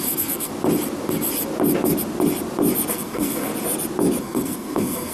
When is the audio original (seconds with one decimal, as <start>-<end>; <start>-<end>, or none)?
0.5-2.9; 3.5-4.2